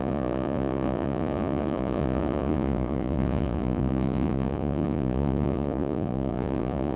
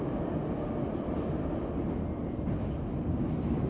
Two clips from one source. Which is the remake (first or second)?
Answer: first